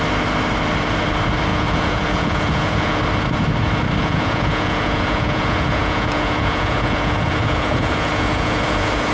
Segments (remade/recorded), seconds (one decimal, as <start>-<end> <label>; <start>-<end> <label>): 0.0-1.5 recorded; 1.5-3.0 remade; 3.0-4.0 recorded; 4.0-9.1 remade